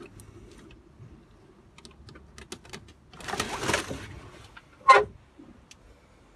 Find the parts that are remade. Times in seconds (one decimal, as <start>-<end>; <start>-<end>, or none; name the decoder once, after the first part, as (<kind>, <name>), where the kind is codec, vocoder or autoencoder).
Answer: none